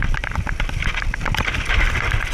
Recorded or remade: recorded